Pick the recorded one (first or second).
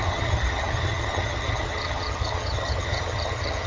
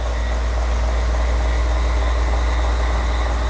second